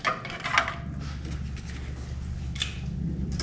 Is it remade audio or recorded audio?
remade